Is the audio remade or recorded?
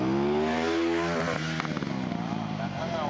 recorded